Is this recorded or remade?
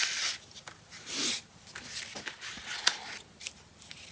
recorded